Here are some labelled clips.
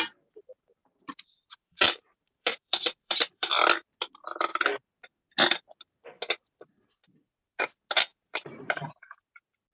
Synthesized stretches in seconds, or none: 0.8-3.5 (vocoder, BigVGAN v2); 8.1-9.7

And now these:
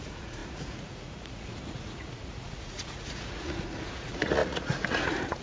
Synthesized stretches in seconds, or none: 0.0-5.4 (vocoder, Vocos)

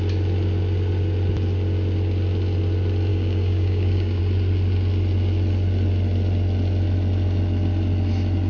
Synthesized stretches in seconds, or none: 3.1-4.2 (codec, DAC)

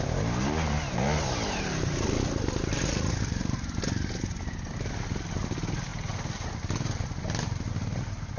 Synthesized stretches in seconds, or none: none